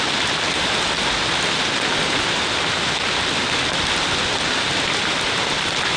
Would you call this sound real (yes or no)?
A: yes